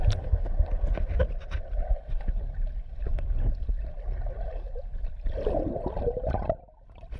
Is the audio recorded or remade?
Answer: recorded